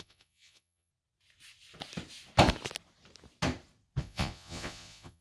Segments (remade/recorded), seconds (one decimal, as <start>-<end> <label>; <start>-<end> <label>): 0.0-0.9 remade; 0.9-4.0 recorded; 4.0-5.2 remade